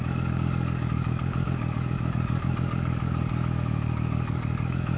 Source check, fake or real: fake